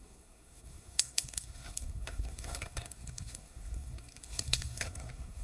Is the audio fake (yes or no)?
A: yes